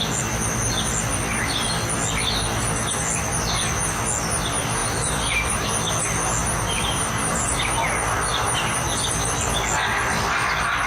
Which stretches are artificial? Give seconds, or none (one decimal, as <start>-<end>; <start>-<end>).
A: 4.8-5.7; 6.4-7.6